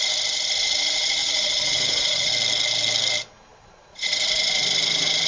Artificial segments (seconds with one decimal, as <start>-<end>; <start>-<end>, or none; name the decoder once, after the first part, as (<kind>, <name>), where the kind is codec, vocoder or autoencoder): 1.2-2.3 (vocoder, Vocos); 3.5-4.1